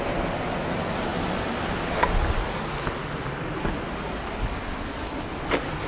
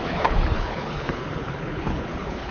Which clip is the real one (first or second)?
first